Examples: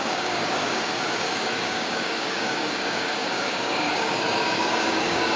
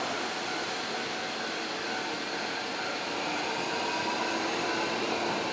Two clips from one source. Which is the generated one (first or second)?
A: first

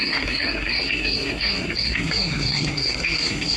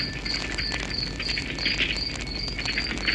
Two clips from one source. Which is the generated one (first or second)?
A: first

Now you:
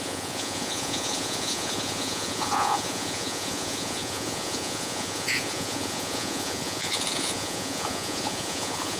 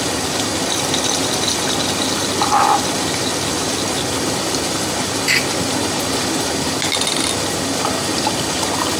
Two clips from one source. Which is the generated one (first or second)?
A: first